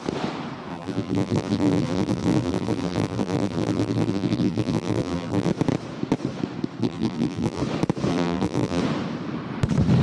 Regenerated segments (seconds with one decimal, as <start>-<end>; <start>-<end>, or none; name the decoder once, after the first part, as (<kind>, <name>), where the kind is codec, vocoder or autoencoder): 0.7-5.5 (vocoder, BigVGAN v2); 6.8-7.6; 8.1-8.8